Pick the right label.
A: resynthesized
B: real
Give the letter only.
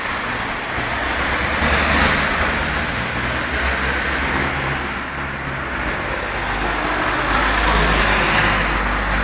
B